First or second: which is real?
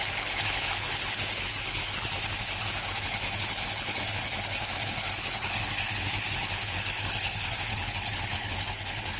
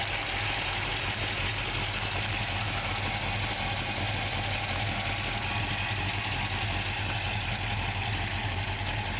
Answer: second